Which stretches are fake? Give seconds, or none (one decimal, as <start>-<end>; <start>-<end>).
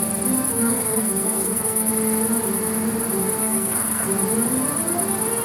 0.5-1.9; 3.4-4.1